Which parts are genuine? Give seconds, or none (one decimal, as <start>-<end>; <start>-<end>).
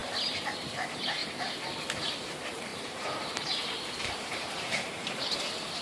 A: 0.0-0.6; 1.2-2.0